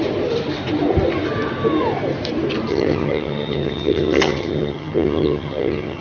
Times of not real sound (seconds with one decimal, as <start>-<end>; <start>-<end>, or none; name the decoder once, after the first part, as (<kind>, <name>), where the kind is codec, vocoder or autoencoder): 2.7-6.0 (vocoder, HiFi-GAN)